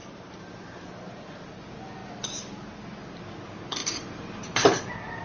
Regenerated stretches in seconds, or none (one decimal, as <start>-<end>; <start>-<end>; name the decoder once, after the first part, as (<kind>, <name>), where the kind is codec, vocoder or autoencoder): 0.0-0.9 (vocoder, BigVGAN v2); 3.8-5.2

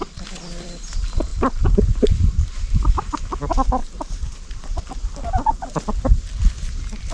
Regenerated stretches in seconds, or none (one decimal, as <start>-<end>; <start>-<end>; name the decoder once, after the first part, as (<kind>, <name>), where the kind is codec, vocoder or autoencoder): 1.3-3.2 (vocoder, BigVGAN v2); 3.8-4.4

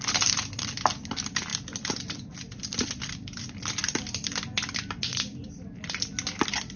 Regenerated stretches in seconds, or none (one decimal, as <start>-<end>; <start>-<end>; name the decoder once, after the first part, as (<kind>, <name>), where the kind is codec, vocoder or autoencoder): 1.5-3.1 (vocoder, BigVGAN v2)